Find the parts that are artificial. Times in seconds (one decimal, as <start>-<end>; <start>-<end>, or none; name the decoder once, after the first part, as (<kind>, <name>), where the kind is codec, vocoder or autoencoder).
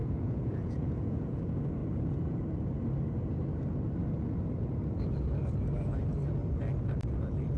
0.0-1.4 (vocoder, Vocos)